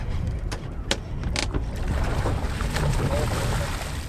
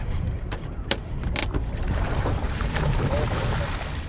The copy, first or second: second